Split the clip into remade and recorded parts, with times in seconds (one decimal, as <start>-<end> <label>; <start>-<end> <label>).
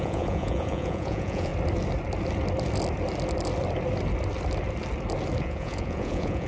0.0-1.5 remade; 1.5-5.4 recorded; 5.4-6.5 remade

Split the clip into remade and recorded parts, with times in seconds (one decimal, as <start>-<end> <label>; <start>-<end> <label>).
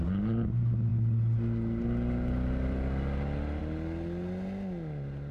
0.0-5.3 recorded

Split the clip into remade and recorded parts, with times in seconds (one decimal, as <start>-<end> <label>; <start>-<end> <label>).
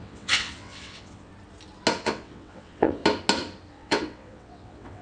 0.0-1.3 remade; 1.3-2.0 recorded; 2.0-3.0 remade; 3.0-3.7 recorded; 3.7-5.0 remade